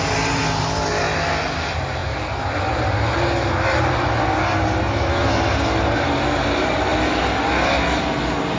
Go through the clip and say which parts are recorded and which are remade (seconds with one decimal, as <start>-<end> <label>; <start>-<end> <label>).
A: 0.0-8.6 recorded